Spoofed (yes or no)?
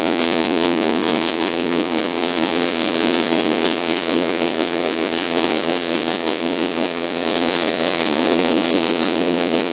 yes